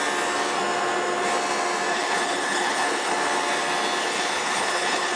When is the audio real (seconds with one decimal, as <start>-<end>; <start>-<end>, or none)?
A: 0.0-1.9; 3.1-4.0